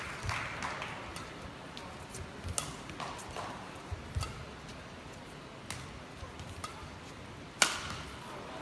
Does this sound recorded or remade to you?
recorded